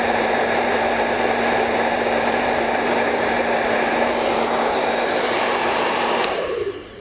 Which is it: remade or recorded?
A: remade